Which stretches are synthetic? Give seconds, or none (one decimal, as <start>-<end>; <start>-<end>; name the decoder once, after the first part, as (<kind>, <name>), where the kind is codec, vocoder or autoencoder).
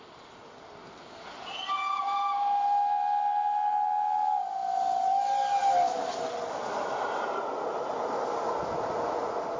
none